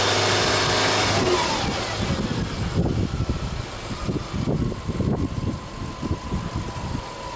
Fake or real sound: real